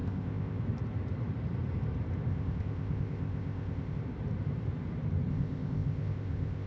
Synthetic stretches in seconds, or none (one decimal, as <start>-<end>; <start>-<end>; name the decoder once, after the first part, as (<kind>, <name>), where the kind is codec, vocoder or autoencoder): 0.0-0.6 (codec, ZipCodec); 2.3-4.0; 5.3-6.7